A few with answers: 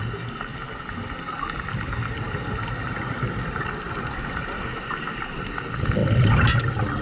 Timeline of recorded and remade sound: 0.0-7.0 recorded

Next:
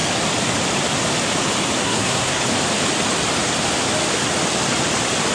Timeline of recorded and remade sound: 0.0-1.8 recorded; 1.8-2.4 remade; 2.4-5.3 recorded